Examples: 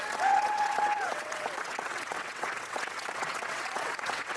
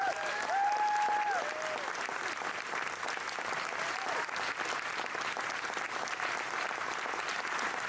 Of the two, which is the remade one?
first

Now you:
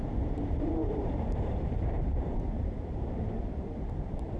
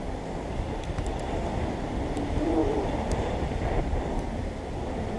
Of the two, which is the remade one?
first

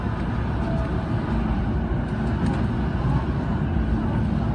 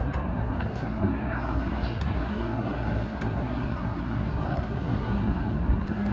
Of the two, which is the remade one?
second